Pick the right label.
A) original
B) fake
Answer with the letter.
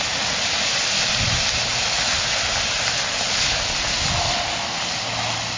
A